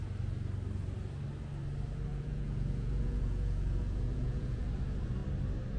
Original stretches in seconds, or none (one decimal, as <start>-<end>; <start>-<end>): 0.0-2.1; 4.7-5.8